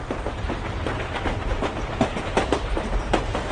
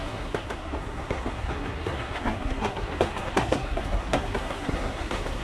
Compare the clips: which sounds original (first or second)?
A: first